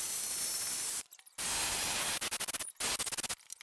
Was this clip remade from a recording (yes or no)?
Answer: no